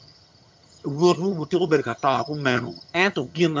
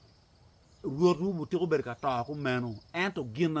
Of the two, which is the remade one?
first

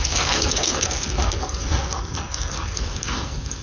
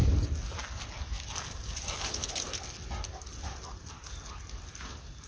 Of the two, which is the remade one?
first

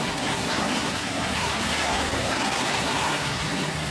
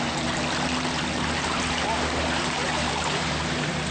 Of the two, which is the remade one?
first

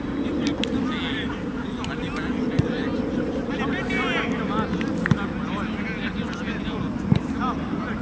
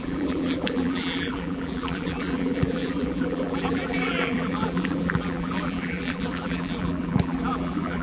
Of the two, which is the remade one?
second